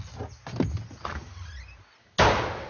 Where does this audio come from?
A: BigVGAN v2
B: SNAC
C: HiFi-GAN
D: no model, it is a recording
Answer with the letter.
D